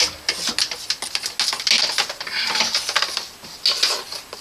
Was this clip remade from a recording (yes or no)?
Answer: no